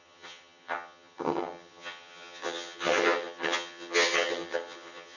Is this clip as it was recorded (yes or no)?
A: no